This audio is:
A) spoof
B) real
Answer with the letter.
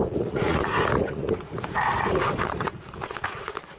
A